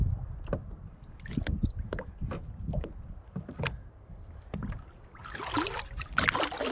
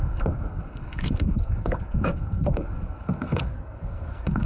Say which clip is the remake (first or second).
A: second